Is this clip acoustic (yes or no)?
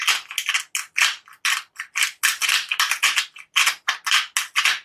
yes